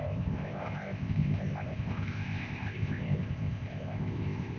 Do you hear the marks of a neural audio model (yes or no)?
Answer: yes